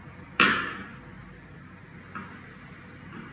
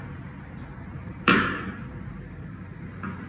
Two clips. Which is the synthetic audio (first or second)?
second